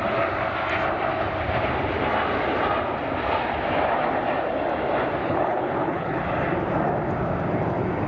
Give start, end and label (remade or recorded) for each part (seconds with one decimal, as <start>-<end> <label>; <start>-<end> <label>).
0.0-5.2 recorded; 5.2-6.2 remade; 6.2-8.1 recorded